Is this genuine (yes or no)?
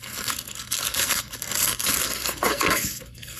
no